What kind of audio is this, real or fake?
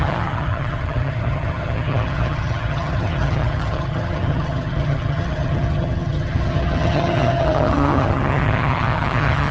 fake